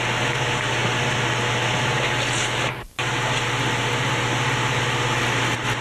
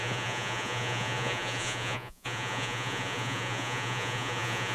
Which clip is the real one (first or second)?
first